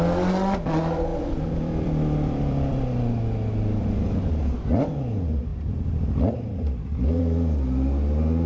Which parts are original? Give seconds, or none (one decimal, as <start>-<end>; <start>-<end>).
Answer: 0.0-1.1; 2.8-5.5; 7.2-8.5